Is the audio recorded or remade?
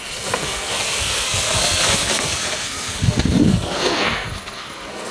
remade